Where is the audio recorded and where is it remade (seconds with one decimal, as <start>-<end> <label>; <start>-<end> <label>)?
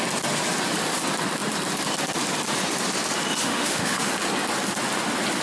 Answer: 0.0-3.4 recorded; 3.4-4.1 remade; 4.1-5.4 recorded